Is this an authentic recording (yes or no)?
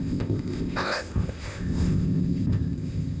no